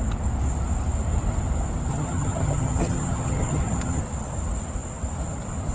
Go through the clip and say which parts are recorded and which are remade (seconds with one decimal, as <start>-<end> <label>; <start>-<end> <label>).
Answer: 0.0-1.9 recorded; 1.9-4.0 remade; 4.0-5.7 recorded